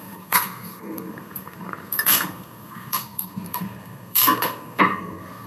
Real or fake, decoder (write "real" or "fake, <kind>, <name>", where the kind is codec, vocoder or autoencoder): fake, codec, SNAC